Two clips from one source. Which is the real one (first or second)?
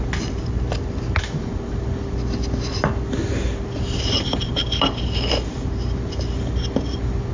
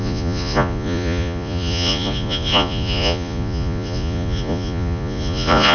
first